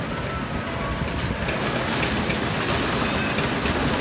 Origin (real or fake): real